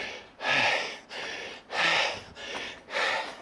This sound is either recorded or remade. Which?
recorded